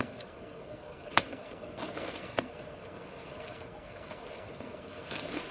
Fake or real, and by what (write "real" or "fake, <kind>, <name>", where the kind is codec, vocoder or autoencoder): fake, codec, SNAC